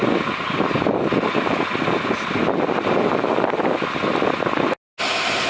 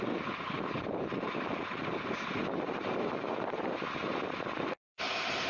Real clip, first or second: first